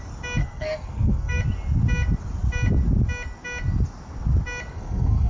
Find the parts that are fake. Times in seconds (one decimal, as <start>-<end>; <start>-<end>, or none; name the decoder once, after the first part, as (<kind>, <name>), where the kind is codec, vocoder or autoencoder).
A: 0.4-1.4 (codec, SNAC); 4.7-5.3